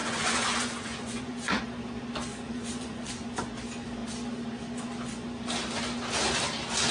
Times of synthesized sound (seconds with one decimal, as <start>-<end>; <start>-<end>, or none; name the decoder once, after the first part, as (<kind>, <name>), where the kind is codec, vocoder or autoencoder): 0.0-1.6 (vocoder, Vocos); 2.3-3.1